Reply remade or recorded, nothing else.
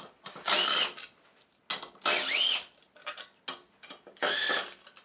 recorded